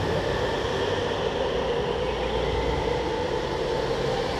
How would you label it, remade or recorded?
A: recorded